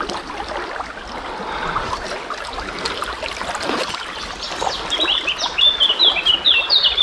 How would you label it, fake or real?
real